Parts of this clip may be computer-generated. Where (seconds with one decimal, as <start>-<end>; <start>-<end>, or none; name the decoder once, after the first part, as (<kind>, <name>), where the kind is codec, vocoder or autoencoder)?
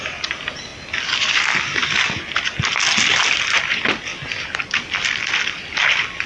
none